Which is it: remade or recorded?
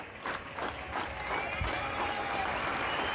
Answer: recorded